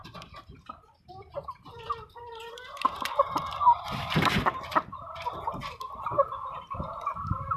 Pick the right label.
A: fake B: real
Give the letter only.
A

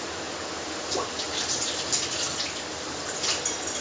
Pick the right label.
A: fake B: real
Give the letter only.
B